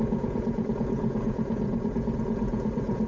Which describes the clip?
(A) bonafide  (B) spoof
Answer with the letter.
B